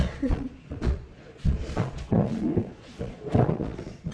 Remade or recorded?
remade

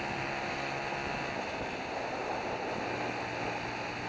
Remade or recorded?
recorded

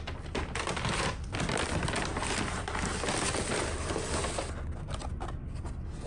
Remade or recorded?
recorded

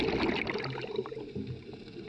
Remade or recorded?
recorded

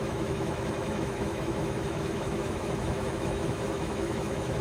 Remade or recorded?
remade